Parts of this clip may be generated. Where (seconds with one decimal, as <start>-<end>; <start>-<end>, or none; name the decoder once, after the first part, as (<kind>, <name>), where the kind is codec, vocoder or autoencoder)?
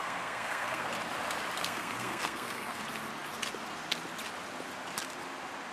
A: 0.0-0.9 (codec, SNAC); 1.6-2.8